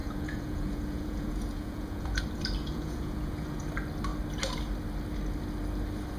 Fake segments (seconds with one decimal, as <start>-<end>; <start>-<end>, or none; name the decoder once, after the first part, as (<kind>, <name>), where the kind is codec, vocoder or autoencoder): 0.0-2.2 (vocoder, Vocos); 2.6-3.6